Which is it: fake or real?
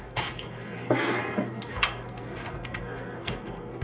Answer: fake